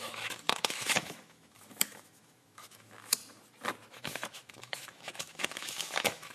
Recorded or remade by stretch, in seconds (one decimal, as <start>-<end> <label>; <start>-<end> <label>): 0.0-3.2 remade; 3.2-3.9 recorded; 3.9-6.3 remade